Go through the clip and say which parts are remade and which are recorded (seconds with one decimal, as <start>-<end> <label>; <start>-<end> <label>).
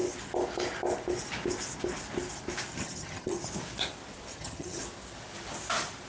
0.0-2.7 recorded; 2.7-3.4 remade; 3.4-4.3 recorded; 4.3-4.8 remade; 4.8-6.1 recorded